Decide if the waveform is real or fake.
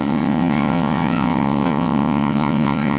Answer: fake